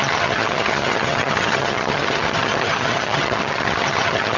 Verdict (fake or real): fake